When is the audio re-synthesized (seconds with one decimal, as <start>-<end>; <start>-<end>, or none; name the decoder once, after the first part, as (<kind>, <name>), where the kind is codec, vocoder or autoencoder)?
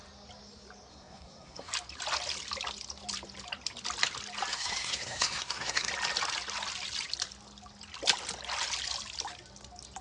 0.9-1.7 (codec, SNAC); 4.5-5.9